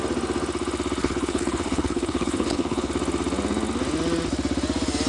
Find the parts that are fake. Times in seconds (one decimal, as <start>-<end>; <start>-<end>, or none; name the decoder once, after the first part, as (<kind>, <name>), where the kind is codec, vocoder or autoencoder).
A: 1.0-2.9 (codec, HILCodec)